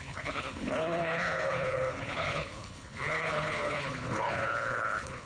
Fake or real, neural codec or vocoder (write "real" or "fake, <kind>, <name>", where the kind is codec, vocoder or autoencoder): fake, codec, HILCodec